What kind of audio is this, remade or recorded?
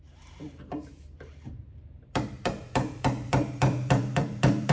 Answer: remade